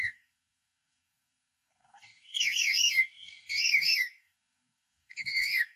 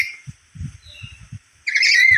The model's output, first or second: first